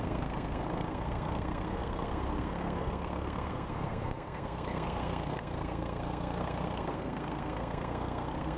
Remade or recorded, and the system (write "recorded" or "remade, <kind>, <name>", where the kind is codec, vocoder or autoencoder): remade, codec, SNAC